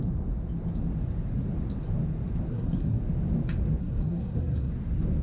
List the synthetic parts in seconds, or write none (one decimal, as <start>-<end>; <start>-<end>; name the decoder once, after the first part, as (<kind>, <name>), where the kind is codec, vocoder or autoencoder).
2.5-3.0 (codec, SNAC); 3.8-4.7